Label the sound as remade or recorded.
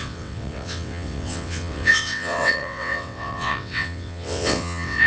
remade